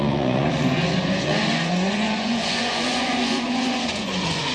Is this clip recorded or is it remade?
remade